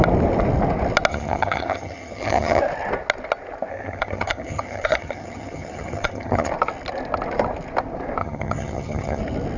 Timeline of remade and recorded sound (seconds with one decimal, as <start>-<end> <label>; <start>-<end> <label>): 0.0-1.1 recorded; 1.1-2.6 remade; 2.6-3.7 recorded; 3.7-6.5 remade; 6.5-8.2 recorded; 8.2-9.2 remade; 9.2-9.6 recorded